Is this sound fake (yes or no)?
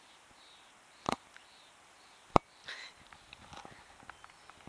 no